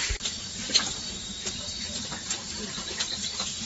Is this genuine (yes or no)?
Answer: no